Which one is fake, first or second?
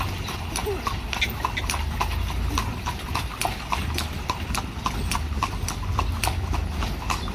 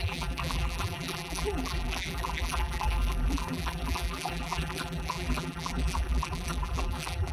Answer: second